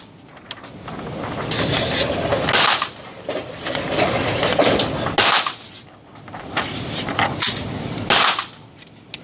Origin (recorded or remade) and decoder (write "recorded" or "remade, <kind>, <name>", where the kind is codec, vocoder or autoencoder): recorded